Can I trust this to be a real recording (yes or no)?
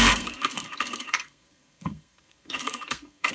no